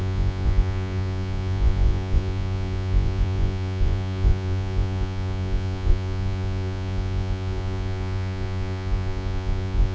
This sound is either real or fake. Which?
fake